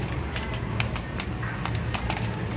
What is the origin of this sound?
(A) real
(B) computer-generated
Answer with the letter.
A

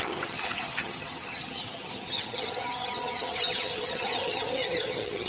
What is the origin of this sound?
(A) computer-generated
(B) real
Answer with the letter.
A